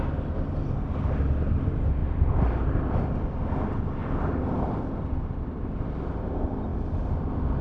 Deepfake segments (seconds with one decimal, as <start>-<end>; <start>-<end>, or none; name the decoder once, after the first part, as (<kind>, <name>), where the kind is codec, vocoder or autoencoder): 4.0-5.9 (vocoder, BigVGAN v2)